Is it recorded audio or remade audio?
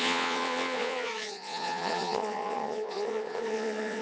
remade